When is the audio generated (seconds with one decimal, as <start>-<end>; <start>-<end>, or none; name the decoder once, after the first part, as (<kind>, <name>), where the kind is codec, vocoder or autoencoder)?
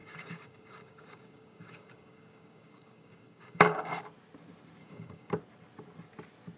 0.0-4.0 (codec, DAC); 4.8-5.3